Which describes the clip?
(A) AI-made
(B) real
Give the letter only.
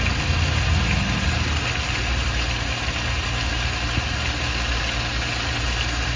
B